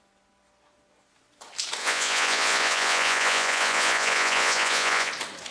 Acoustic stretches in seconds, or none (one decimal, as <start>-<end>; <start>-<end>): 0.0-1.8; 5.1-5.5